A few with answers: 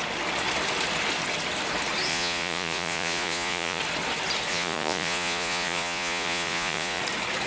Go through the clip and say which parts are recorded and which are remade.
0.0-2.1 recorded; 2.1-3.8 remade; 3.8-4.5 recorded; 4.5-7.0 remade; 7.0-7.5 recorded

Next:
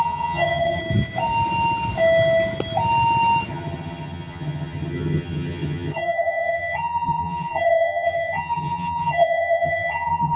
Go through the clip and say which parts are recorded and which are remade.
0.0-0.8 remade; 0.8-3.5 recorded; 3.5-10.4 remade

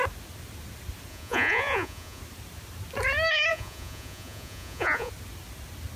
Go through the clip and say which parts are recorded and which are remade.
0.0-1.1 recorded; 1.1-2.2 remade; 2.2-3.5 recorded; 3.5-5.1 remade; 5.1-6.0 recorded

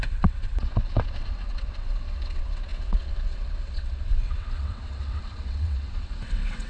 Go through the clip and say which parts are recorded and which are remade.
0.0-6.7 remade

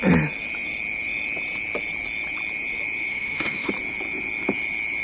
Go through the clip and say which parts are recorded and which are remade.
0.0-3.1 recorded; 3.1-3.7 remade; 3.7-5.0 recorded

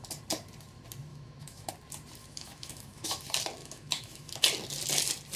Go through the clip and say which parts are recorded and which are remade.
0.0-1.1 recorded; 1.1-1.7 remade; 1.7-2.2 recorded; 2.2-3.2 remade; 3.2-3.6 recorded; 3.6-4.3 remade; 4.3-5.4 recorded